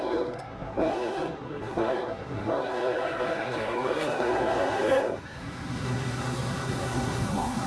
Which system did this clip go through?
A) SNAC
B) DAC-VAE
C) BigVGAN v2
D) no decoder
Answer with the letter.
A